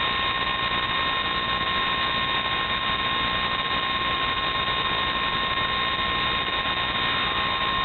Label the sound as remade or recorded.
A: recorded